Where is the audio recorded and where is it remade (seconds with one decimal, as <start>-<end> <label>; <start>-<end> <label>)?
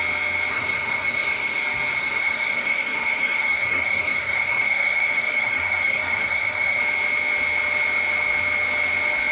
0.0-0.5 recorded; 0.5-1.6 remade; 1.6-2.0 recorded; 2.0-6.8 remade; 6.8-9.3 recorded